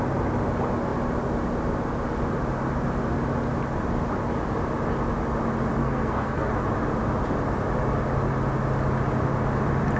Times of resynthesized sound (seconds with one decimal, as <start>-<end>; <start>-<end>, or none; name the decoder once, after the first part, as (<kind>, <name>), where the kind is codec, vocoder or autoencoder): 5.8-6.5 (codec, SNAC)